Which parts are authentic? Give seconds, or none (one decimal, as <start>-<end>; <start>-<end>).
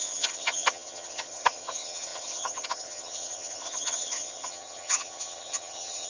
none